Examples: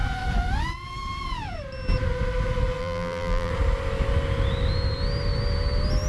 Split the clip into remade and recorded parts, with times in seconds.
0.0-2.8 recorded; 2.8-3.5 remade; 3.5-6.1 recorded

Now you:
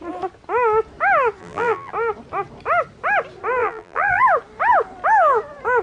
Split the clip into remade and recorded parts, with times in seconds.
0.0-1.4 recorded; 1.4-1.9 remade; 1.9-3.6 recorded; 3.6-4.2 remade; 4.2-5.8 recorded

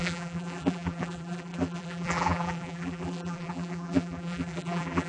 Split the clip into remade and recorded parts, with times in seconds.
0.0-5.1 remade

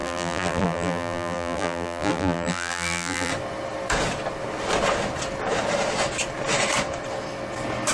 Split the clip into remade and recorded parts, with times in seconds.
0.0-3.3 remade; 3.3-7.9 recorded

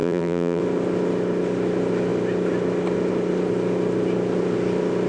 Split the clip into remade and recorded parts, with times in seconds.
0.0-0.6 remade; 0.6-5.1 recorded